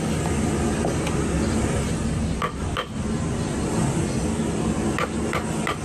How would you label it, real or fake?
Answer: real